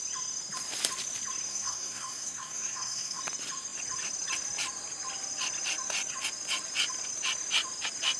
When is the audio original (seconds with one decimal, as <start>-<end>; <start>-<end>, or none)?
0.0-1.5; 3.2-8.2